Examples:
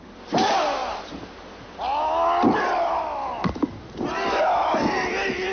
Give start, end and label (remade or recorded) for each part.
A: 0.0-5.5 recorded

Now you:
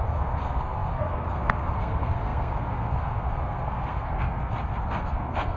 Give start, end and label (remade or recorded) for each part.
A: 0.0-5.6 remade

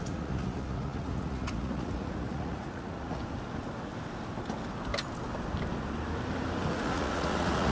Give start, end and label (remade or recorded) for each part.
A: 0.0-3.2 remade; 3.2-6.7 recorded; 6.7-7.7 remade

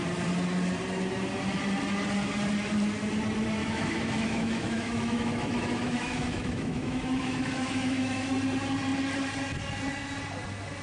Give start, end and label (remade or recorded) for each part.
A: 0.0-3.6 recorded; 3.6-8.3 remade; 8.3-10.8 recorded

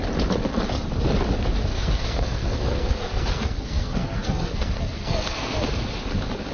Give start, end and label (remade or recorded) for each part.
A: 0.0-1.7 recorded; 1.7-5.6 remade; 5.6-6.5 recorded

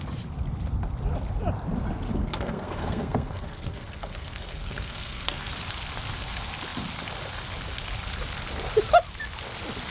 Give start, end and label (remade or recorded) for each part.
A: 0.0-2.2 recorded; 2.2-5.5 remade; 5.5-9.9 recorded